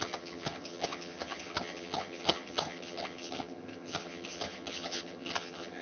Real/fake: fake